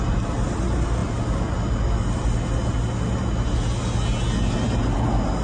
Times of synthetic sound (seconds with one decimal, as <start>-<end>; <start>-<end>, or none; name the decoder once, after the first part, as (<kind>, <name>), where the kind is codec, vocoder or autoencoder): none